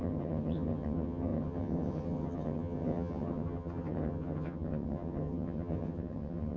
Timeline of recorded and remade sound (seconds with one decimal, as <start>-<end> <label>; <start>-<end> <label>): 0.0-6.6 remade